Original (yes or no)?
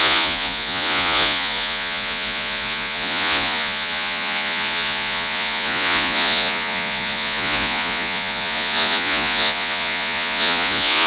no